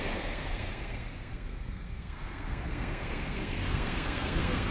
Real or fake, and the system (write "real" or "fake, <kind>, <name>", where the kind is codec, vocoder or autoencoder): fake, codec, SNAC